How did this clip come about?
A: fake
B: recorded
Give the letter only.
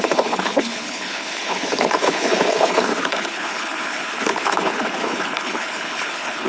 A